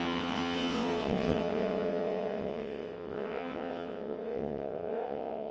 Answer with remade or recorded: remade